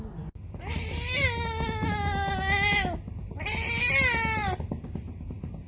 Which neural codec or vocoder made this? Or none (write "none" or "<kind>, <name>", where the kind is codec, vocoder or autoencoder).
none